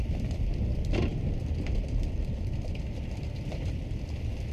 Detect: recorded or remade recorded